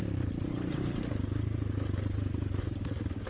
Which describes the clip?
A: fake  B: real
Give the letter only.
B